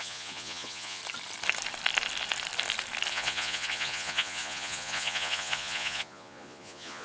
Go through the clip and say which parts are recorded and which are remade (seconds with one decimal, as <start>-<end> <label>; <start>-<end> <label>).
0.0-1.0 remade; 1.0-3.1 recorded; 3.1-7.0 remade